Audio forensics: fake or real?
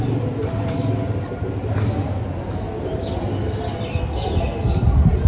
real